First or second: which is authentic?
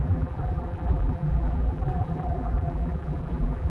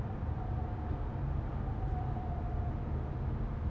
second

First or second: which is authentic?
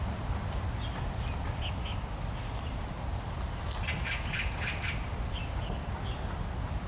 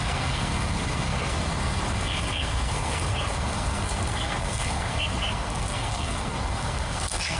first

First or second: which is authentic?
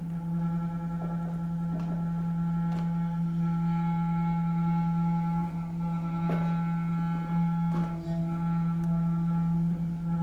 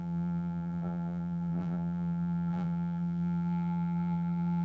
first